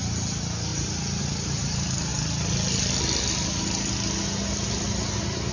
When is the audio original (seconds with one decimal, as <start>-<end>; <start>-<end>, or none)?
0.0-5.5